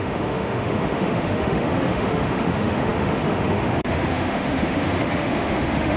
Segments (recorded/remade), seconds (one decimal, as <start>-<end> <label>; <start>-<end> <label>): 0.0-6.0 remade